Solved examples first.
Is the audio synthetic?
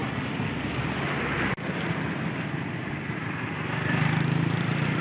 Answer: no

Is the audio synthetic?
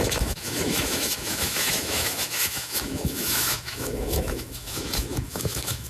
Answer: yes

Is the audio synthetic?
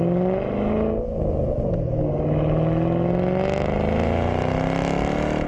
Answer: no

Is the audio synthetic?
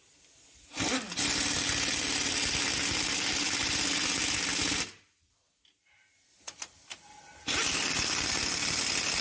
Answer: no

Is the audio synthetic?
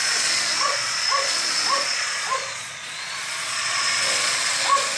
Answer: yes